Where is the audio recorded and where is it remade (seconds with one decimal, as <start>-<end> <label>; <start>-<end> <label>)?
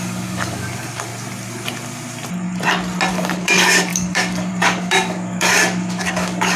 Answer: 0.0-1.1 remade; 1.1-3.1 recorded; 3.1-6.6 remade